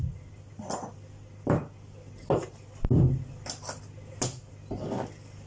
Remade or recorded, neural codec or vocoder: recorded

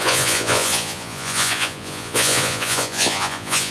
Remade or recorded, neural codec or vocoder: remade, vocoder, Vocos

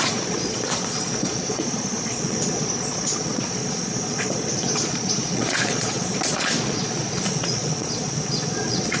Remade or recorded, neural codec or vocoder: remade, vocoder, Vocos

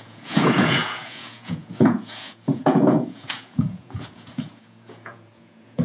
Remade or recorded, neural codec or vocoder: remade, vocoder, Vocos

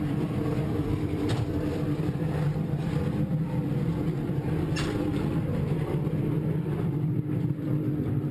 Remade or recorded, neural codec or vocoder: remade, vocoder, BigVGAN v2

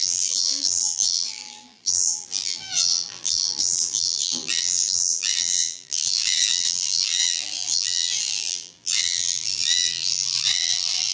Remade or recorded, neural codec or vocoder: remade, vocoder, BigVGAN v2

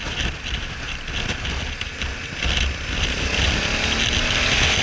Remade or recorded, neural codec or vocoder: recorded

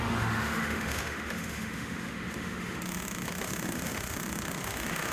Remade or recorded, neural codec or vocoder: remade, autoencoder, DAC-VAE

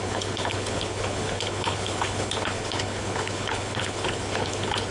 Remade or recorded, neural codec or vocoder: remade, codec, HILCodec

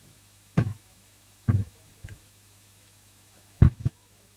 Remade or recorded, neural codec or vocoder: remade, autoencoder, DAC-VAE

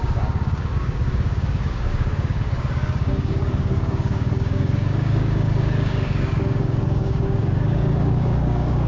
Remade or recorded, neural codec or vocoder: remade, codec, DAC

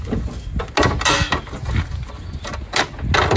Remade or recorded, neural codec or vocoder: recorded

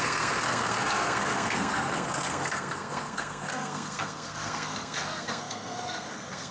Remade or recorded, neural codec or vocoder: remade, codec, SNAC